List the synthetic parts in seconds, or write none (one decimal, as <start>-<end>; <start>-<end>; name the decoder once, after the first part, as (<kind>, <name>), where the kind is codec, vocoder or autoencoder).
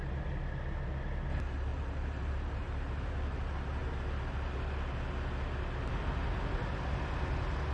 1.7-3.4 (vocoder, BigVGAN v2)